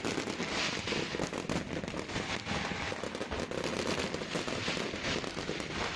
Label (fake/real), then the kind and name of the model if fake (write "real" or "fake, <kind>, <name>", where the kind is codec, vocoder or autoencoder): real